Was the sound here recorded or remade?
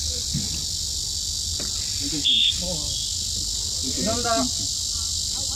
recorded